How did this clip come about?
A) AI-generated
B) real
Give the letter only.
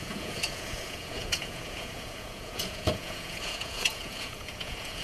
A